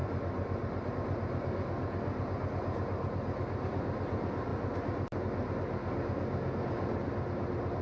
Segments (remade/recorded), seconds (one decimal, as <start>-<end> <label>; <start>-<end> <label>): 0.0-7.8 recorded